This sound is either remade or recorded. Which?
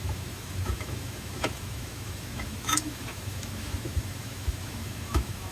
remade